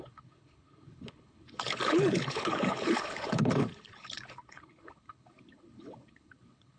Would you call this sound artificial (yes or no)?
yes